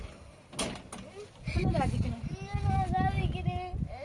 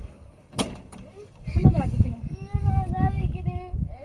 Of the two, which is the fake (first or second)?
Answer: second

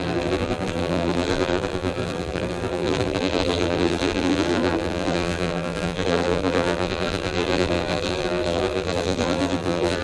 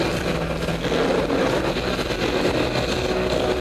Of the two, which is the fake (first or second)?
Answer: first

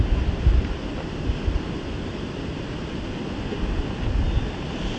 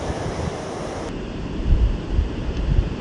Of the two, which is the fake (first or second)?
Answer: second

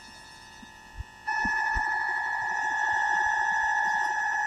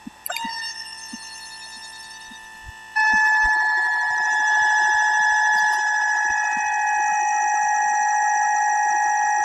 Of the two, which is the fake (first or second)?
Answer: first